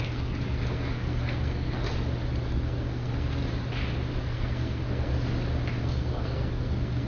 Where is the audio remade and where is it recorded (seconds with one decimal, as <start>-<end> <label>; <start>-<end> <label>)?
0.0-1.9 remade; 1.9-2.5 recorded; 2.5-3.4 remade; 3.4-4.2 recorded; 4.2-5.1 remade; 5.1-5.8 recorded; 5.8-7.1 remade